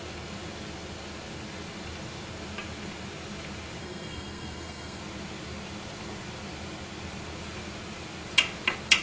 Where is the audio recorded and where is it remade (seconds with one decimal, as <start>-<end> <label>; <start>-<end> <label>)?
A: 0.0-3.8 recorded; 3.8-5.0 remade; 5.0-9.0 recorded